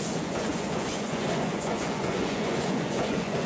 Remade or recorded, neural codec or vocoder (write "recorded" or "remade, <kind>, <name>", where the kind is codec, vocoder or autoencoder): remade, vocoder, Vocos